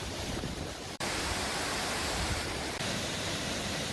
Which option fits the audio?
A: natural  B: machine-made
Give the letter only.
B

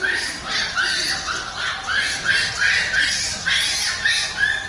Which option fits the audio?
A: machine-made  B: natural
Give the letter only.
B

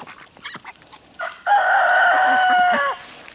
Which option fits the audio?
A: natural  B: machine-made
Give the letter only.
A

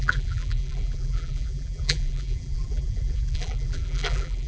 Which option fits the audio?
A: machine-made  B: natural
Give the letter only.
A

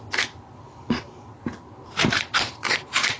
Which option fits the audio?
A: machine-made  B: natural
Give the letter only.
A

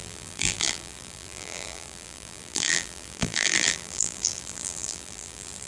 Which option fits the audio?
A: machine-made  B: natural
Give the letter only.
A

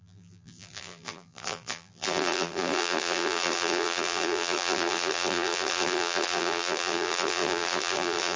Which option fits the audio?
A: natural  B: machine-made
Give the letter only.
B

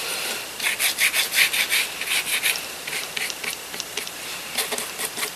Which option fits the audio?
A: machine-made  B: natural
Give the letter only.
A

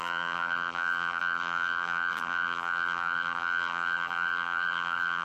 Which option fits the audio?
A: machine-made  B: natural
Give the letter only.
A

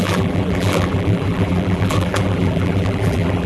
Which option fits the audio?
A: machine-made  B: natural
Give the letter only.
A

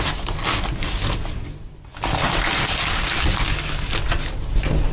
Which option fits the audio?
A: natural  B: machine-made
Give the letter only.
A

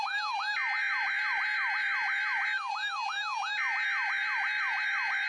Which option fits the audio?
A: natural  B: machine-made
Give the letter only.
A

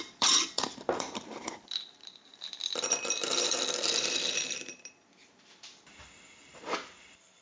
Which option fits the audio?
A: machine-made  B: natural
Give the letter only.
A